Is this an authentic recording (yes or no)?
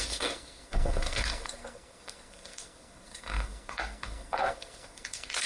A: no